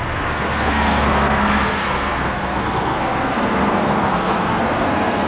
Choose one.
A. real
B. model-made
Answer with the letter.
B